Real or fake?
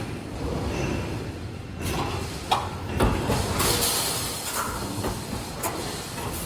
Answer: real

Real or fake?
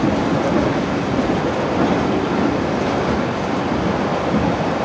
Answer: real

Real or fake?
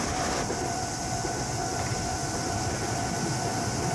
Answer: real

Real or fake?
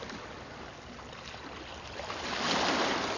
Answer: real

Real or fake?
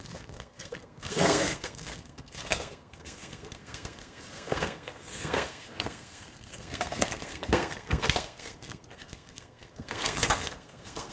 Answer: fake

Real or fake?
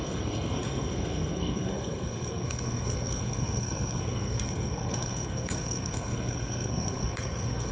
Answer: fake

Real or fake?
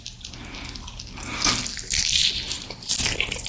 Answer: real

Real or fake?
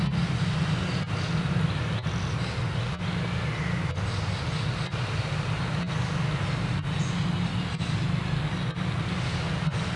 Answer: real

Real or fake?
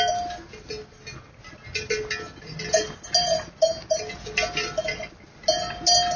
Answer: real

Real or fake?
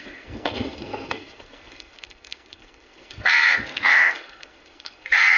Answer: fake